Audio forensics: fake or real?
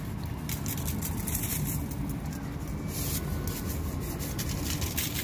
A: real